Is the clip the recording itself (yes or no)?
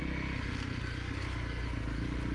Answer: yes